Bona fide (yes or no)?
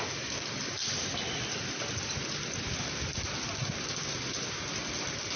yes